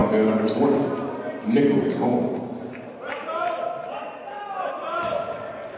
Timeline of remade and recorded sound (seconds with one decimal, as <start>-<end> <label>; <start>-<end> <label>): 0.0-2.1 recorded; 2.1-5.8 remade